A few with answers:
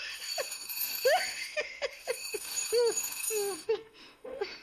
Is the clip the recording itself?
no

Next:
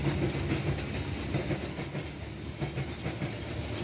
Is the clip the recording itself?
yes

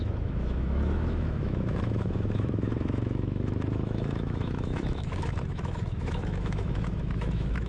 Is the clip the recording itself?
no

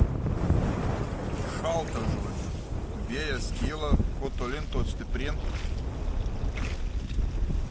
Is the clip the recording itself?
yes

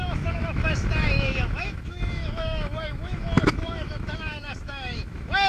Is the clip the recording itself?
no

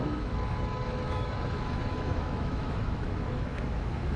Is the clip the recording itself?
no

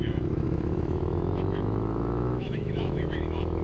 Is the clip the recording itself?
no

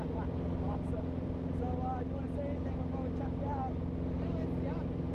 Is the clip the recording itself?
yes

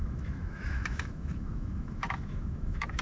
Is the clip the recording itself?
no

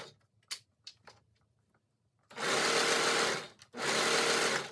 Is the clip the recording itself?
yes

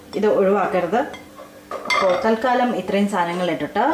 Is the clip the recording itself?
yes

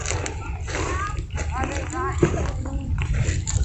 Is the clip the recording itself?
yes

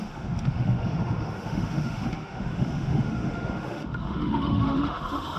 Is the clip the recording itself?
no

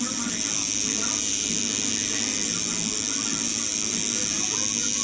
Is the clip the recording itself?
yes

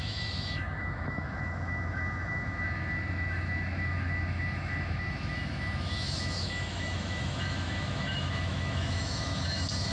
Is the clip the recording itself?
no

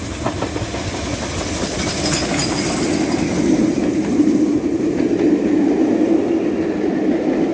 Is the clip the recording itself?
yes